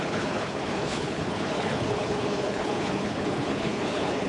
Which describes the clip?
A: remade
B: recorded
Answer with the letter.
A